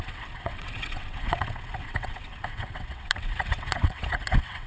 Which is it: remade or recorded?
remade